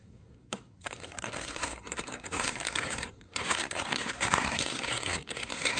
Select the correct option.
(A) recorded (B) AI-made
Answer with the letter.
B